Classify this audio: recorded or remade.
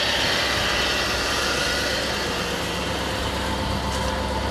recorded